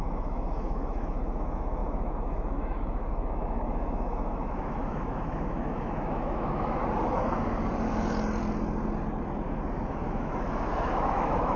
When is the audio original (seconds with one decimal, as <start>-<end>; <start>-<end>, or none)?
6.8-9.9

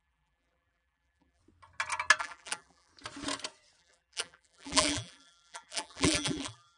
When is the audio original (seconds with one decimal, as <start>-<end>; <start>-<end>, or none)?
1.4-2.2; 2.9-3.8

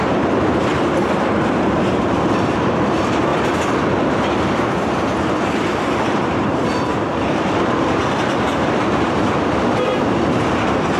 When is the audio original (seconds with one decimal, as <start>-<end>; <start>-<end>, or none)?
3.3-6.0

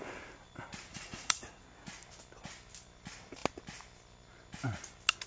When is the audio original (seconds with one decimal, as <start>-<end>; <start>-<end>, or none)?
0.0-0.9; 1.6-5.3

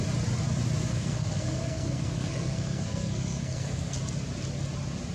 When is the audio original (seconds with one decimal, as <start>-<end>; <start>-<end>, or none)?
0.0-0.9; 4.0-5.1

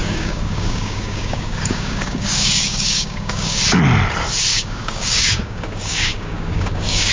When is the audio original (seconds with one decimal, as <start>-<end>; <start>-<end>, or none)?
3.6-4.5

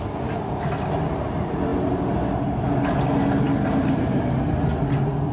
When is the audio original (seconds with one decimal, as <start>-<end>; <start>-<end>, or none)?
0.0-5.3